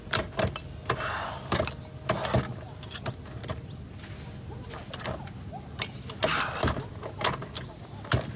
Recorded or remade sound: recorded